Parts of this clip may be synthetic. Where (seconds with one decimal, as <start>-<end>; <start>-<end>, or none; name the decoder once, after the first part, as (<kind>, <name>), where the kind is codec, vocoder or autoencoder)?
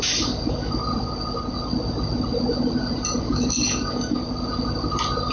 0.0-0.8 (codec, DAC); 3.2-4.2